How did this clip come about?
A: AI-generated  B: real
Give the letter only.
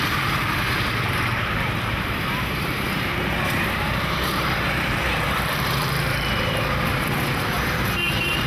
A